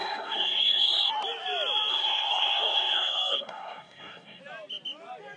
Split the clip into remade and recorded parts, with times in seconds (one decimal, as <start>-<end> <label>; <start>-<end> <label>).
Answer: 0.0-1.1 remade; 1.1-1.9 recorded; 1.9-4.4 remade; 4.4-5.4 recorded